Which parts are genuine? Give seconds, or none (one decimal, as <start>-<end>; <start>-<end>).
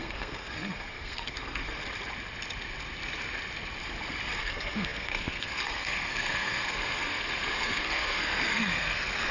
1.8-4.4